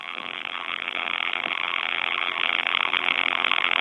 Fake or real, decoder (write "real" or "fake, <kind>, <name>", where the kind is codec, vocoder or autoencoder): fake, vocoder, BigVGAN v2